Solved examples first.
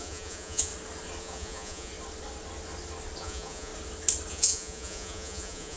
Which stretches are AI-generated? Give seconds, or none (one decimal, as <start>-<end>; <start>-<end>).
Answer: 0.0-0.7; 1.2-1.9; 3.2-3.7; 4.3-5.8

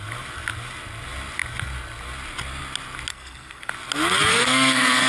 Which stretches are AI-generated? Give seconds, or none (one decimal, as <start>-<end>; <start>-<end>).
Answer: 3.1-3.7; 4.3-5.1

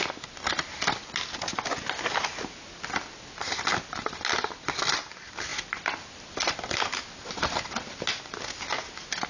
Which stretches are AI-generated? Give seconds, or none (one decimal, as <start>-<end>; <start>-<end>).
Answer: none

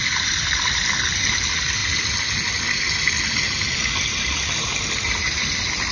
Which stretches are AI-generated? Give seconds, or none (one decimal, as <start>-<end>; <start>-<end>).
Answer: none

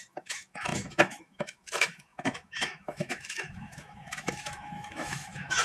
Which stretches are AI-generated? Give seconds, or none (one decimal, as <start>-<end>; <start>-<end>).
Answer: 0.0-5.6

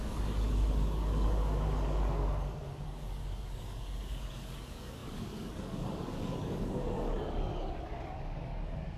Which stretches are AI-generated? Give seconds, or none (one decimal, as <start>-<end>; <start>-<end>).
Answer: 0.0-9.0

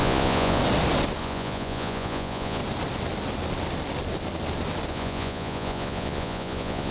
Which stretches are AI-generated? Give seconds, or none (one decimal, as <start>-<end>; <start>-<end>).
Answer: 0.0-0.6; 1.2-2.6; 4.9-6.9